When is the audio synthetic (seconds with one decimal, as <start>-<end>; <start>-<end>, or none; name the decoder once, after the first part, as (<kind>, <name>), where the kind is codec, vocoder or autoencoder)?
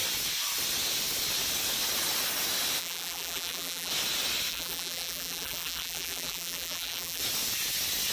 2.8-3.9 (vocoder, BigVGAN v2); 4.5-7.2